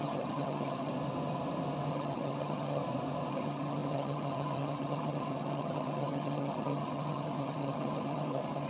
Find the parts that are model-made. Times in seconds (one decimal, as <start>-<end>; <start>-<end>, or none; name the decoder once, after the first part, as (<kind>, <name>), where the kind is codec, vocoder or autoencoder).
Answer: 0.0-0.9 (vocoder, HiFi-GAN); 1.9-2.8; 3.3-8.7